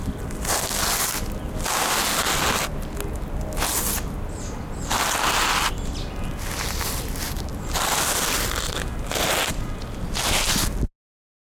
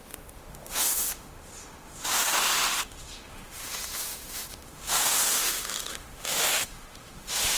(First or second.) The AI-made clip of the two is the second